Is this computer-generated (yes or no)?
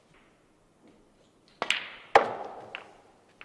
no